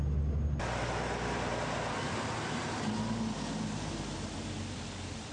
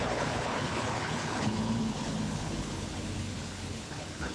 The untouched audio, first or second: first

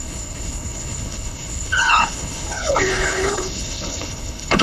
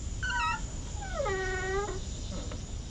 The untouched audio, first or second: second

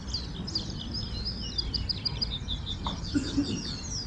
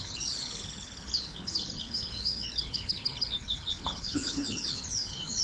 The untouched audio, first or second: first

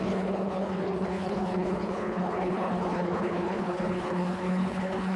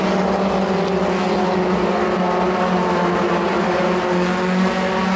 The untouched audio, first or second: second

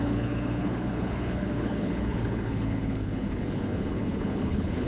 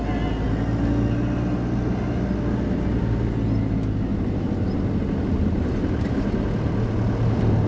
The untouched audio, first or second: second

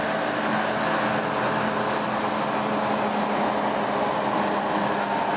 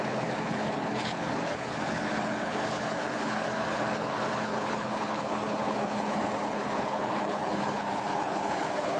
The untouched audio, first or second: first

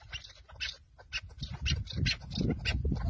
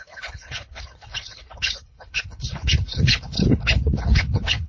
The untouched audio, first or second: first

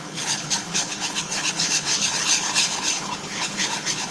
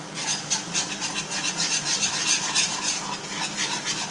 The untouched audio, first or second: second